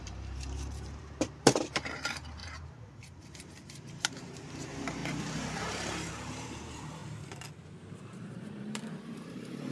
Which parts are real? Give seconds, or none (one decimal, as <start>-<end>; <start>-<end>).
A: 7.0-8.3